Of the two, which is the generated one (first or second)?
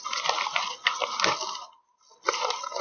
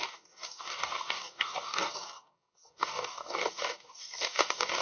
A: second